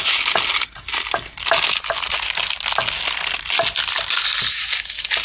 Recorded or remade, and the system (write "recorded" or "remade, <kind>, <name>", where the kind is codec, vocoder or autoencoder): recorded